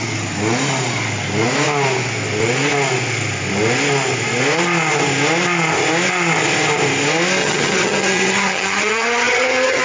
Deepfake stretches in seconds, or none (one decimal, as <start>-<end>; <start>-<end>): 7.4-9.8